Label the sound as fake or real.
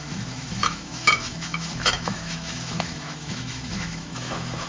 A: fake